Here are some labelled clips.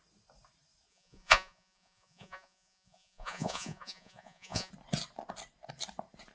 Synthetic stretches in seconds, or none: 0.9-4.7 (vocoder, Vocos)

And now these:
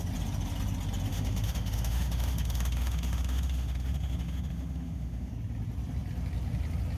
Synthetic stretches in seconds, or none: 1.1-5.3 (autoencoder, DAC-VAE)